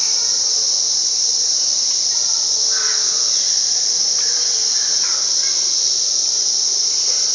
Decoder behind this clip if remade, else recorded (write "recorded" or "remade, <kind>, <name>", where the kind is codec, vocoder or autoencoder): recorded